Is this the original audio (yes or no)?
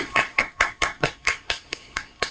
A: no